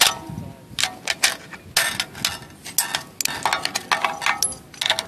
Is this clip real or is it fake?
real